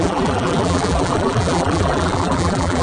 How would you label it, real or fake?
fake